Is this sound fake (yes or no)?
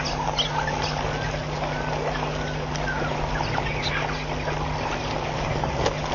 no